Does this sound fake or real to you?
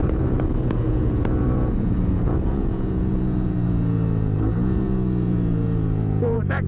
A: fake